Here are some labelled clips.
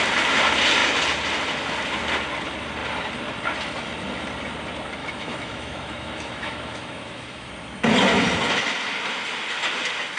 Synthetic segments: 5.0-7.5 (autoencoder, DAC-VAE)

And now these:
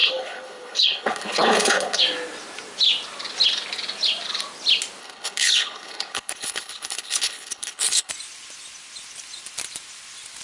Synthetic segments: 0.0-2.0 (codec, HILCodec); 5.0-8.1

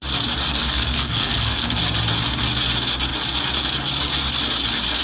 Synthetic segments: 0.5-1.8 (codec, SNAC)

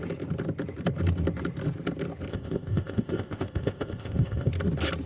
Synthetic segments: 2.3-4.5 (codec, ZipCodec)

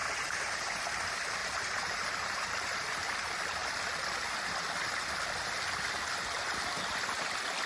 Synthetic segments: 0.0-0.9 (vocoder, BigVGAN v2); 1.4-2.5

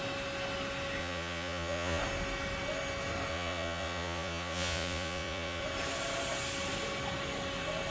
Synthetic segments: 1.0-2.0 (vocoder, Vocos); 3.3-5.6

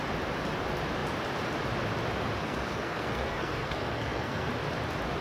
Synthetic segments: 2.4-4.5 (codec, SNAC)

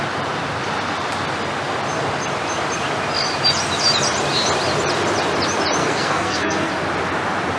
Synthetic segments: 5.8-6.7 (codec, SNAC)